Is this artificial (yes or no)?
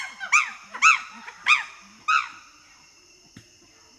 no